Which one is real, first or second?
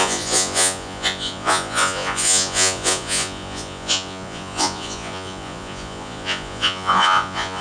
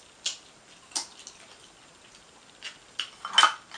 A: second